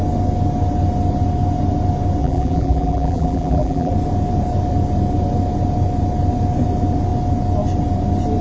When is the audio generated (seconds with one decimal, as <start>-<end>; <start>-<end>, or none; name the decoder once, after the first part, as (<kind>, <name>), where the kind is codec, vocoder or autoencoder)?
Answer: 2.2-3.9 (vocoder, BigVGAN v2)